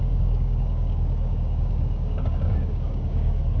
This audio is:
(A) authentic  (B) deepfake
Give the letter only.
B